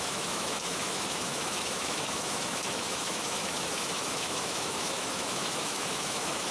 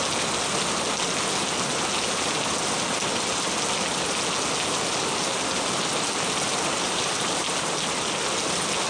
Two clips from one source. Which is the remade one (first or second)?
first